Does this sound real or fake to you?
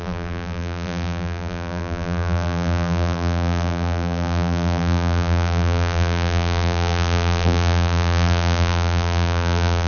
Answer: fake